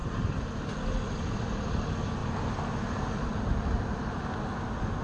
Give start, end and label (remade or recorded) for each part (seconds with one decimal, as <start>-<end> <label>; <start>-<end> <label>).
0.0-0.5 remade; 0.5-5.0 recorded